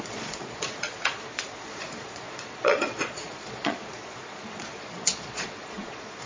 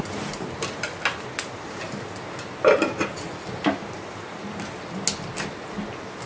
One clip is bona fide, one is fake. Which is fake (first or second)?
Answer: first